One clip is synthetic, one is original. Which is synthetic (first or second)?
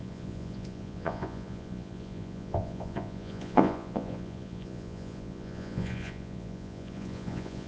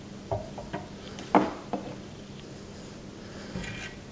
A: first